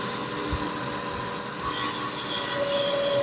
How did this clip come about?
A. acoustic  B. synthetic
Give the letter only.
A